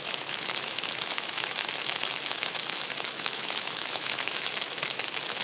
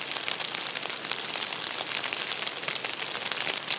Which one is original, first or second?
second